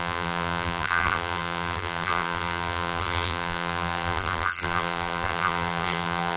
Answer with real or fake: fake